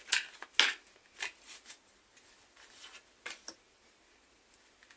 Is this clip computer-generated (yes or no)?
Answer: no